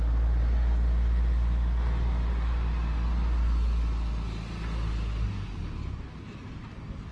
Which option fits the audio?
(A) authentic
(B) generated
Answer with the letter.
A